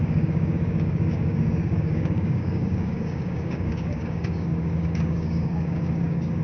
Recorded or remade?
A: remade